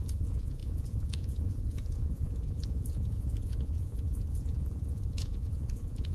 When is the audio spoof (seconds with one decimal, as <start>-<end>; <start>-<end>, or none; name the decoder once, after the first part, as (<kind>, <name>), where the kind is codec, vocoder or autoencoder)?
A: 0.0-6.1 (vocoder, Vocos)